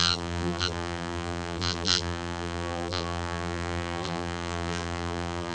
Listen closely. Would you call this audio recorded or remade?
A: remade